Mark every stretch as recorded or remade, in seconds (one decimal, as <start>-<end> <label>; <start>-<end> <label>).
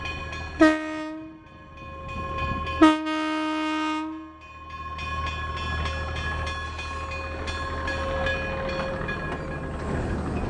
0.0-10.5 recorded